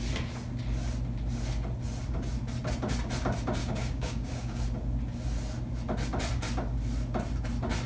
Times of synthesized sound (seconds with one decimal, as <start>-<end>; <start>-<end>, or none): 3.6-4.6